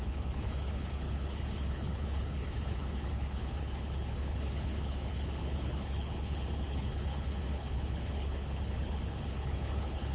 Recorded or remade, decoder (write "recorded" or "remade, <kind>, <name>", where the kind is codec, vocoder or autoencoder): remade, codec, HILCodec